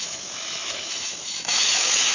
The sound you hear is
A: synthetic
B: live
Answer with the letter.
A